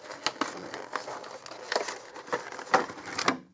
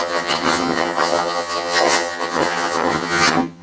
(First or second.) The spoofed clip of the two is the second